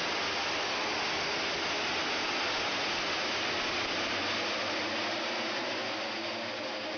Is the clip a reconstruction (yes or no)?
no